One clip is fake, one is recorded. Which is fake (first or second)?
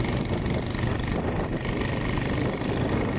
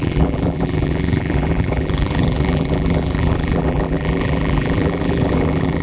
second